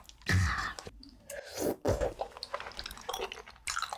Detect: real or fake real